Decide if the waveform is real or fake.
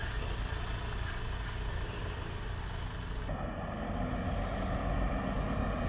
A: real